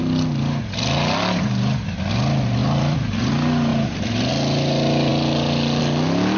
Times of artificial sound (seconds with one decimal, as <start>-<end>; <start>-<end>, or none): 2.6-3.3; 3.7-4.3